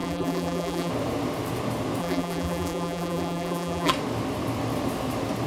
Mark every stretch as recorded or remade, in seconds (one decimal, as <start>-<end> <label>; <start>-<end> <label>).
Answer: 0.0-0.9 remade; 0.9-2.0 recorded; 2.0-3.9 remade; 3.9-5.5 recorded